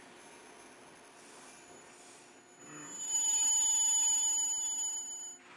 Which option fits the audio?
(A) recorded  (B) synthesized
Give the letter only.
A